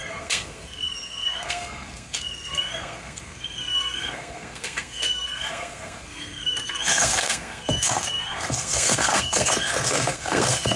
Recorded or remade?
remade